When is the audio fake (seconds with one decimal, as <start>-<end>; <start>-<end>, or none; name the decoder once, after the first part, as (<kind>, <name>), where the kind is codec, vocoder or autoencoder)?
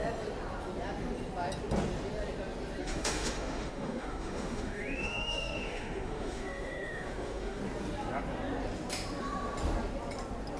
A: 2.8-7.6 (autoencoder, DAC-VAE)